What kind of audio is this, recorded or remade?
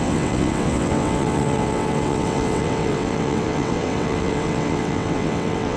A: remade